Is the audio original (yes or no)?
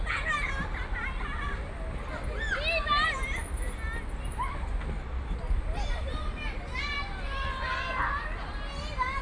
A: yes